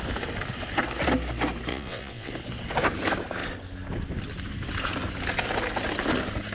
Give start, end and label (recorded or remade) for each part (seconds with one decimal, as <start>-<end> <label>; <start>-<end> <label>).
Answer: 0.0-1.7 recorded; 1.7-2.3 remade; 2.3-6.5 recorded